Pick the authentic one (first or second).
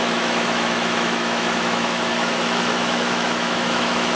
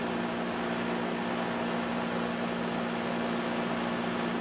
second